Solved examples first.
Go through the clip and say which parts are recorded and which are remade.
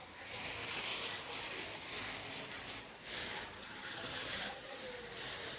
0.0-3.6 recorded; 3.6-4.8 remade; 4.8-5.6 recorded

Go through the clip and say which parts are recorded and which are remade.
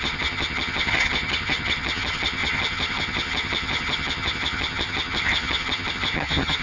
0.0-6.6 remade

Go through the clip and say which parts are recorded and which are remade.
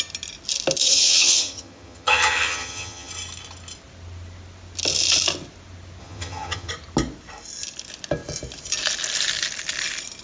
0.0-0.8 recorded; 0.8-3.1 remade; 3.1-6.0 recorded; 6.0-6.7 remade; 6.7-10.2 recorded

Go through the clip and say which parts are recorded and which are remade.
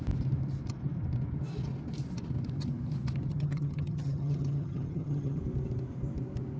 0.0-3.3 recorded; 3.3-5.4 remade; 5.4-6.6 recorded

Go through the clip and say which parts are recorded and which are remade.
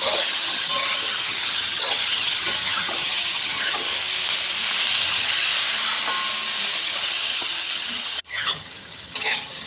0.0-3.9 remade; 3.9-5.1 recorded; 5.1-5.5 remade; 5.5-6.8 recorded; 6.8-9.7 remade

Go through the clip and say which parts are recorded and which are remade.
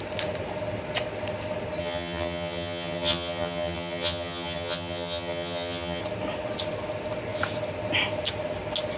0.0-1.8 recorded; 1.8-6.0 remade; 6.0-9.0 recorded